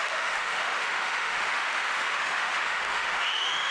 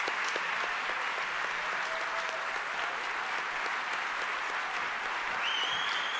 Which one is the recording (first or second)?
second